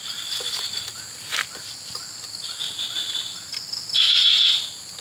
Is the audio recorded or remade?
recorded